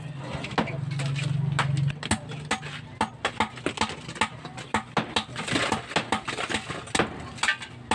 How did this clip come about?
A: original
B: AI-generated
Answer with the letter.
A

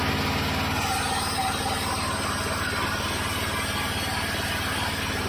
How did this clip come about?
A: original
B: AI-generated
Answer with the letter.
A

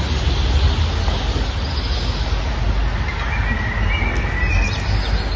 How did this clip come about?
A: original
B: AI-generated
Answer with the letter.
A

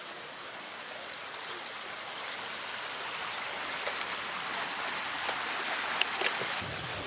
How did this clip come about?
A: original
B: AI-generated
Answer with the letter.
A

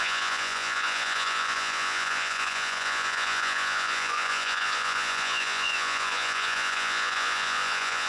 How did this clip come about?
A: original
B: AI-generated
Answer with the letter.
B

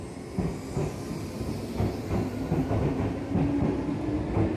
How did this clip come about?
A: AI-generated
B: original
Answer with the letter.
B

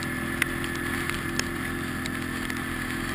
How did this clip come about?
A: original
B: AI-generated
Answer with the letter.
A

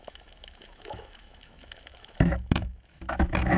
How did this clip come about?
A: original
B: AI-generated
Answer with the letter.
B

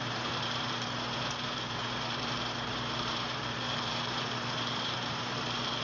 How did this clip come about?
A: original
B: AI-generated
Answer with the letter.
B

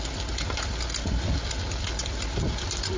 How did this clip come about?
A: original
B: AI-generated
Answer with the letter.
A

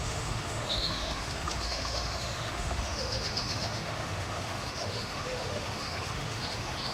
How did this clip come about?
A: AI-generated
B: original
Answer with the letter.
A